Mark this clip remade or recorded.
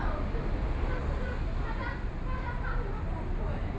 recorded